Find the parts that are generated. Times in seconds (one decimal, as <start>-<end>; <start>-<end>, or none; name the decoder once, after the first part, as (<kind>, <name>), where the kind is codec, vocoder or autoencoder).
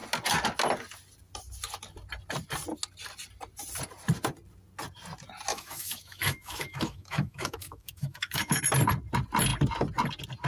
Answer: 5.5-8.6 (autoencoder, DAC-VAE)